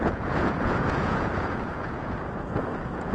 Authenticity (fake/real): fake